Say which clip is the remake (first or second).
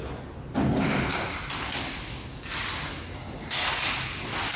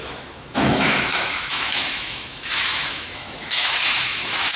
second